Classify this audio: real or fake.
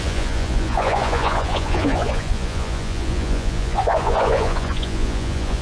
fake